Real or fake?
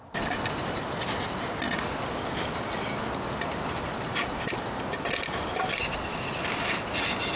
real